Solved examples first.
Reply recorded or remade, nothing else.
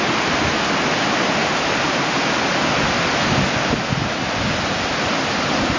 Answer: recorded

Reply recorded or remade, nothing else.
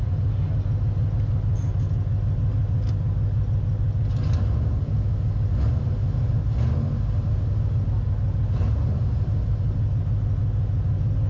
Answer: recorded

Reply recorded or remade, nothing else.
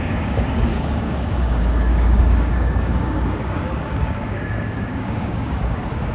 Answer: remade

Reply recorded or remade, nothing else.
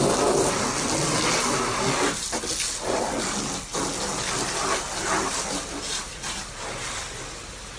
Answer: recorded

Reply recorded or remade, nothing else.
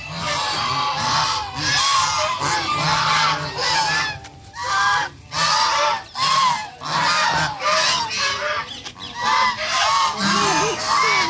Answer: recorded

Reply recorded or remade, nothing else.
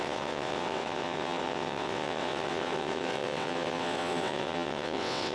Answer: remade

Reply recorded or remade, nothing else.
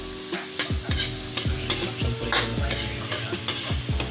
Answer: recorded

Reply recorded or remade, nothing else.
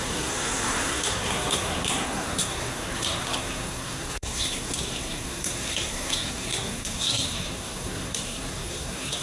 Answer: remade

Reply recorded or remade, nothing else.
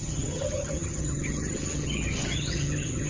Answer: remade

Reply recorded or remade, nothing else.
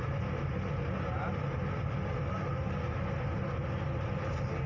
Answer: recorded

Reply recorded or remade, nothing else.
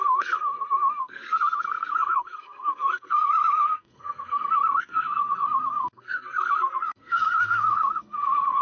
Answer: remade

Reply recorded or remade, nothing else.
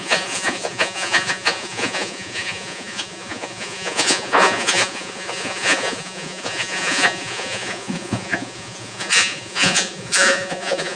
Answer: remade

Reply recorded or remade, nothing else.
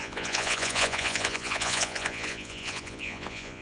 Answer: remade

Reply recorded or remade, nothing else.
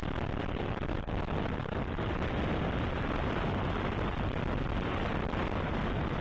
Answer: recorded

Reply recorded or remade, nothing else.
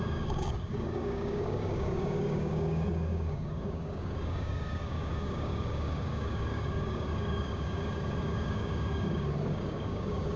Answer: remade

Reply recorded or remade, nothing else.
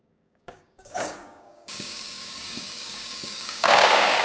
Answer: remade